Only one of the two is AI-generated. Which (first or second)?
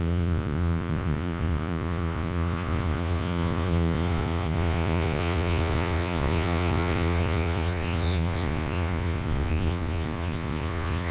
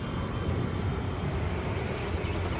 first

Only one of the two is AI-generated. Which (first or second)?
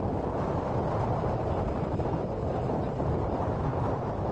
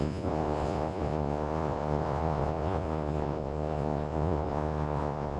second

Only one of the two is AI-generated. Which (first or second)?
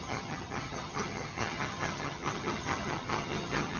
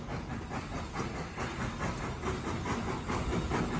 first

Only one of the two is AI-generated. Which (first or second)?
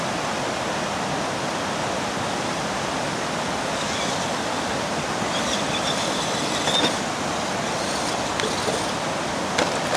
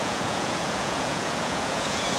second